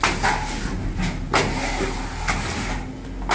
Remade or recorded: recorded